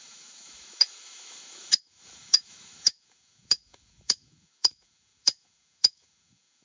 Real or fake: fake